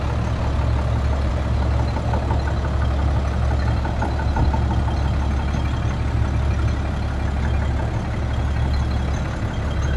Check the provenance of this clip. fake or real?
real